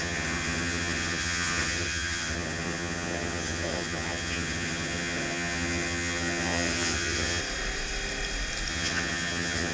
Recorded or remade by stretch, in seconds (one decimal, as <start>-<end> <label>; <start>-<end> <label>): 0.0-7.4 remade; 7.4-8.7 recorded; 8.7-9.7 remade